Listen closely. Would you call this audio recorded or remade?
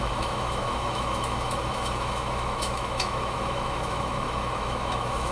remade